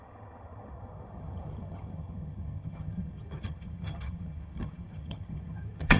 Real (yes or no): no